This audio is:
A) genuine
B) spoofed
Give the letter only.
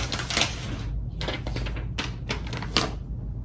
A